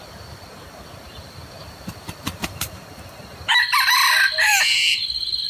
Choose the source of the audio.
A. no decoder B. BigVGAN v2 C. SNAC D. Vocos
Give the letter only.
B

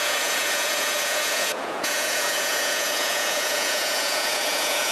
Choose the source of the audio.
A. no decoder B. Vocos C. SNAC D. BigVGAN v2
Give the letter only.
B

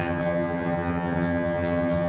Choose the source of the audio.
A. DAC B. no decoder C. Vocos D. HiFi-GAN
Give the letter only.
D